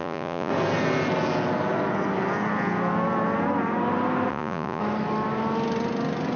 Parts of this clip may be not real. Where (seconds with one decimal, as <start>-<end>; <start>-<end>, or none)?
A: 0.0-0.5; 4.3-4.8